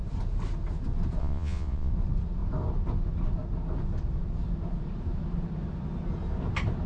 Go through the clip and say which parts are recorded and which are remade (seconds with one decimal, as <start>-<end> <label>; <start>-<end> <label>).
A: 0.0-1.2 recorded; 1.2-1.9 remade; 1.9-6.9 recorded